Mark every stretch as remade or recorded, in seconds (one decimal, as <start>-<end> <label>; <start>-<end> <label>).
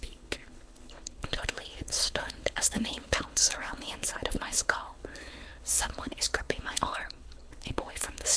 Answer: 0.0-8.4 remade